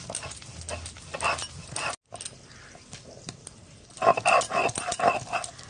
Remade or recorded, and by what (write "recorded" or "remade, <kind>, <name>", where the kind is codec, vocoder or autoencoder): recorded